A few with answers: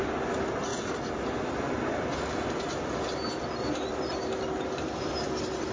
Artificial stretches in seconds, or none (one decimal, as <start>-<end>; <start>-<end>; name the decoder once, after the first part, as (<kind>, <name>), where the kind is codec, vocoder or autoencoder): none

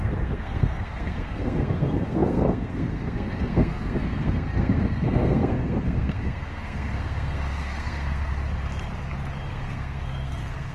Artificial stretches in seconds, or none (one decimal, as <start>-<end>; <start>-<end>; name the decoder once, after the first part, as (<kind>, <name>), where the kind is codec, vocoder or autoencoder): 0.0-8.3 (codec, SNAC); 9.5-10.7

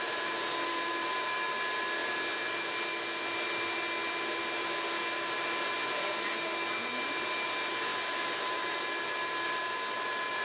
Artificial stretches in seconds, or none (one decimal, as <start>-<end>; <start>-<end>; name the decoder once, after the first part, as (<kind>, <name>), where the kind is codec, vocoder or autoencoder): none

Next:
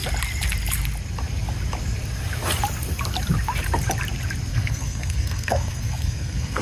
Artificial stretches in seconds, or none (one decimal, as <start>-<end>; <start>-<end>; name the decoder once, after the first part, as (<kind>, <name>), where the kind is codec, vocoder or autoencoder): 4.5-6.6 (codec, SNAC)

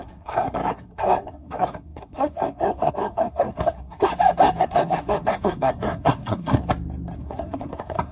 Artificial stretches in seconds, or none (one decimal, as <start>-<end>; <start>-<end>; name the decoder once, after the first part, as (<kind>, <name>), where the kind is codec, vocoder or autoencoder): 0.0-4.1 (codec, SNAC); 4.6-6.6; 7.2-8.1

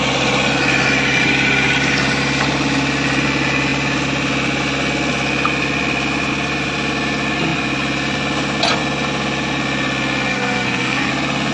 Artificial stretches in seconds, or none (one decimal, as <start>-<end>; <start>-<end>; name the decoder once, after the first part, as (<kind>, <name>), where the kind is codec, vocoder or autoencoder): 10.3-11.1 (codec, SNAC)

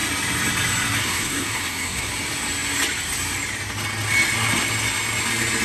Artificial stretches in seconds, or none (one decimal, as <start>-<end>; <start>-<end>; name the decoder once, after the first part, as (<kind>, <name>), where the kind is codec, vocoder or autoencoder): 1.0-2.1 (codec, SNAC)

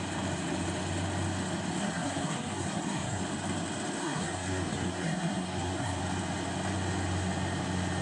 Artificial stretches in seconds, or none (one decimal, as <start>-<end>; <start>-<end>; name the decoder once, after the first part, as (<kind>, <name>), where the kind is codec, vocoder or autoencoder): 1.8-3.2 (codec, SNAC); 4.0-6.0